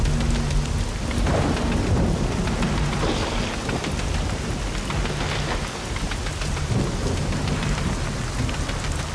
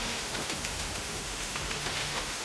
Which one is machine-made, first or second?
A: second